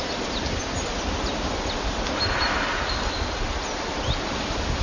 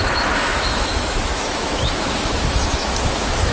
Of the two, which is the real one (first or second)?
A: first